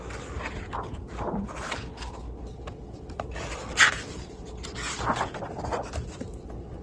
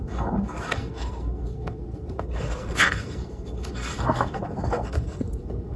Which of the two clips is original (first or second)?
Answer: first